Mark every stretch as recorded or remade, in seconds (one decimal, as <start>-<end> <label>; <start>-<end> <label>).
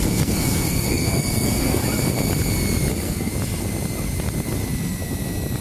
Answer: 0.0-1.8 remade; 1.8-2.9 recorded; 2.9-3.3 remade; 3.3-5.6 recorded